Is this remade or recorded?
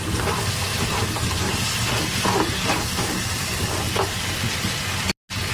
recorded